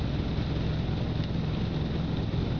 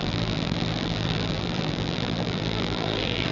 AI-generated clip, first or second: second